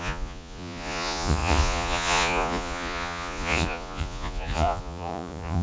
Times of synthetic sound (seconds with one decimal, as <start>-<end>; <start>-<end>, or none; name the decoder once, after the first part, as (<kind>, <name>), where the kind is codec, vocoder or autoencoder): 0.0-5.6 (vocoder, Vocos)